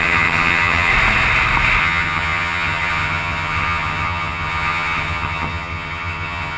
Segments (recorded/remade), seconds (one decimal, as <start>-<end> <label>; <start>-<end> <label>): 0.0-0.9 remade; 0.9-1.8 recorded; 1.8-6.6 remade